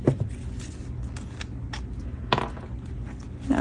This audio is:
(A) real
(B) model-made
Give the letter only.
A